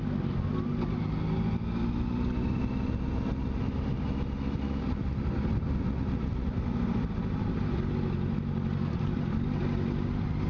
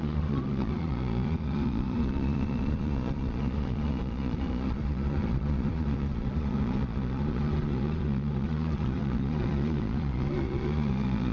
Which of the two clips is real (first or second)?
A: first